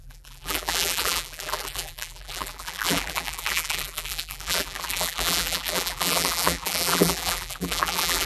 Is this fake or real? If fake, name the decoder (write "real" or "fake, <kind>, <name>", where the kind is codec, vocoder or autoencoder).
fake, vocoder, BigVGAN v2